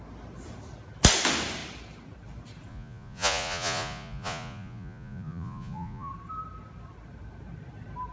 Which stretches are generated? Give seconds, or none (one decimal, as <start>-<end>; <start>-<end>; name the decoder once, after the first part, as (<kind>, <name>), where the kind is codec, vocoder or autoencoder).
2.7-6.1 (vocoder, Vocos)

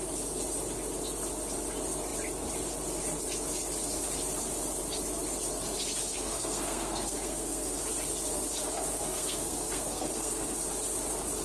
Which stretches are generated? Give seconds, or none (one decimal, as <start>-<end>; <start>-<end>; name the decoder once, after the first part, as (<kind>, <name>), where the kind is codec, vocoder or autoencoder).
6.1-7.8 (codec, SNAC); 8.9-10.6

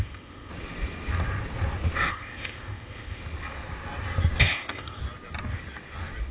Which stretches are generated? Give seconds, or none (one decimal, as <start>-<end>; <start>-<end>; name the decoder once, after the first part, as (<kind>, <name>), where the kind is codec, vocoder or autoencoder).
0.0-0.5 (codec, ZipCodec); 2.1-3.2; 4.4-5.0

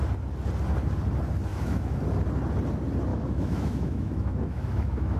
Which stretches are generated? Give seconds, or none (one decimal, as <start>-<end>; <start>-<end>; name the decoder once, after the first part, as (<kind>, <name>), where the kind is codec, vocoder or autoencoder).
1.5-2.0 (autoencoder, DAC-VAE); 3.1-5.2

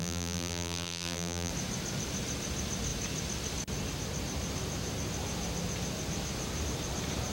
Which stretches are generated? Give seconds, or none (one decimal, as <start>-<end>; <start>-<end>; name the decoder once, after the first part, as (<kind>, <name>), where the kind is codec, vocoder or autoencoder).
0.0-1.5 (vocoder, BigVGAN v2)